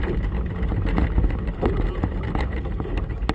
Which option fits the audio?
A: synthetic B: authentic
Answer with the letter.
B